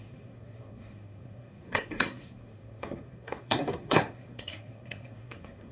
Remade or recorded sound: remade